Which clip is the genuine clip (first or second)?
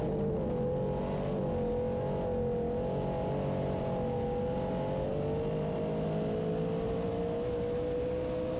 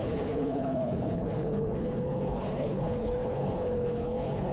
first